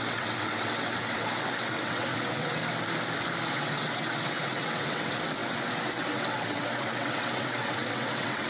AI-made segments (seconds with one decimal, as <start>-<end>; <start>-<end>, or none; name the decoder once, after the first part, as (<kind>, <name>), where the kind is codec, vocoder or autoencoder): 0.0-2.6 (vocoder, WaveNeXt); 3.5-8.5